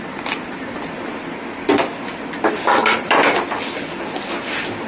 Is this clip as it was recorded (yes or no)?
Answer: yes